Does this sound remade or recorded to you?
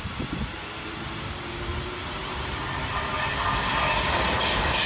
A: recorded